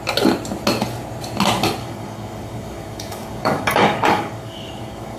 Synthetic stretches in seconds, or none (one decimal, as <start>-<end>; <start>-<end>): 1.8-5.2